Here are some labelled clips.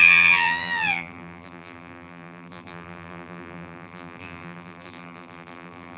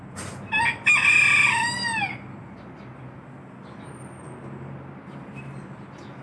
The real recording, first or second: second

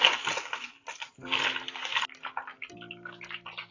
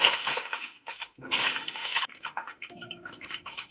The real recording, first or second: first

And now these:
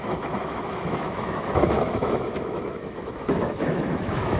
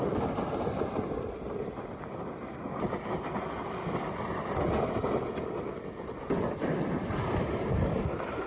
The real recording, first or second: second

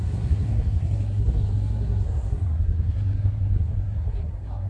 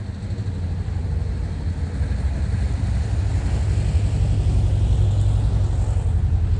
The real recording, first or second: second